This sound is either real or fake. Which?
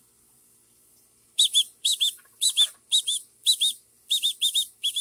real